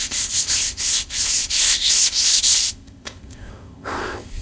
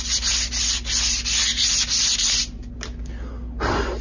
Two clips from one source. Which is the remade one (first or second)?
first